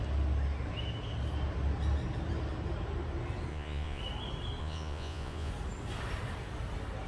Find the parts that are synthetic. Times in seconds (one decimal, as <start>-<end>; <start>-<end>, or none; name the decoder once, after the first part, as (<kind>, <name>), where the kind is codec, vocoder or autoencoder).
3.5-4.0 (vocoder, Vocos); 4.6-5.5

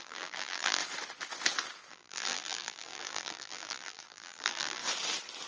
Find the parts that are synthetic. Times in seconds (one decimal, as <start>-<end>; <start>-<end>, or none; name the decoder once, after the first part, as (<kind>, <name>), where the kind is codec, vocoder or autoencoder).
0.0-0.8 (vocoder, BigVGAN v2); 1.9-4.8